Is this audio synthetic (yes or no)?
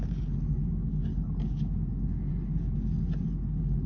no